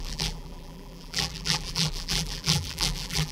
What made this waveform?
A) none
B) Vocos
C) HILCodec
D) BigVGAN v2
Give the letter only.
D